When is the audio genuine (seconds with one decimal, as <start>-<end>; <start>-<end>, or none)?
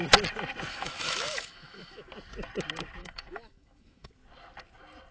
0.0-0.7; 2.1-3.0; 4.1-5.1